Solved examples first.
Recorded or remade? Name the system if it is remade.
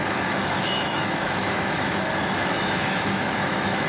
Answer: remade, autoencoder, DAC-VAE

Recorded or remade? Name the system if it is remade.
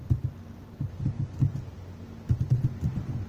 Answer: recorded